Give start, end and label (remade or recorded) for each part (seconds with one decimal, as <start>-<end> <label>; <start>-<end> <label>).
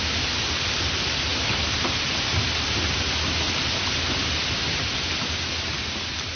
0.0-6.4 recorded